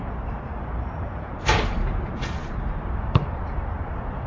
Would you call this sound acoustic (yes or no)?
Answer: no